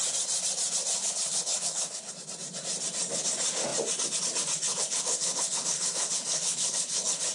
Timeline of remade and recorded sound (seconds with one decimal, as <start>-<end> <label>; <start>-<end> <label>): 0.0-1.0 recorded; 1.0-2.1 remade; 2.1-4.7 recorded; 4.7-7.3 remade